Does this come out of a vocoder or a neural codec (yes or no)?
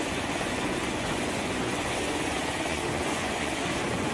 yes